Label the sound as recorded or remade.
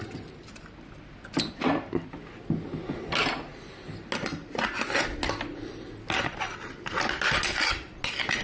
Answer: recorded